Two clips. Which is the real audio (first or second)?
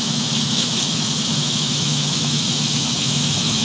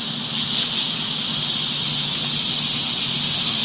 second